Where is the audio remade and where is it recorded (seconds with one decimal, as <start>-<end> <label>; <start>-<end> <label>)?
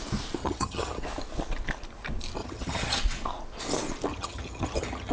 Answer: 0.0-0.4 recorded; 0.4-1.0 remade; 1.0-2.4 recorded; 2.4-3.0 remade; 3.0-4.1 recorded; 4.1-5.1 remade